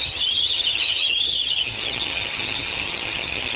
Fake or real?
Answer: fake